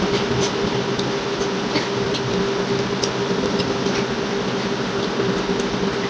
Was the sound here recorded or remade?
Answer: recorded